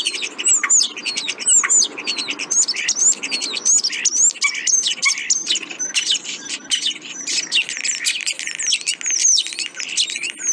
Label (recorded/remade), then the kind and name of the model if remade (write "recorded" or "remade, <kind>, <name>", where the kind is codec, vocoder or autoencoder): recorded